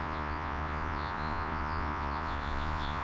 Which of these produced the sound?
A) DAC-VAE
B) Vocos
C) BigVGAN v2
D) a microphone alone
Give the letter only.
B